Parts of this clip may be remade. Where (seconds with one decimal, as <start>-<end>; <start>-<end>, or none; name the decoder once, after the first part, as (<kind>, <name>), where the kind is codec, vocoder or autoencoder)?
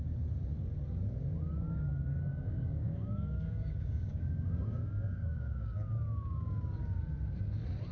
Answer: 2.3-7.0 (codec, DAC)